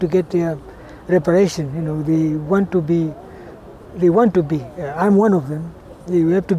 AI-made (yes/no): no